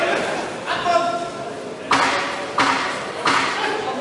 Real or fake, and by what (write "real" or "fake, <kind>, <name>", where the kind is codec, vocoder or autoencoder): real